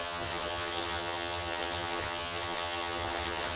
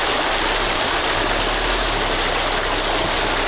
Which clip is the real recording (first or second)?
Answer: second